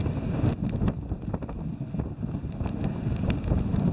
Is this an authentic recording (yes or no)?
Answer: yes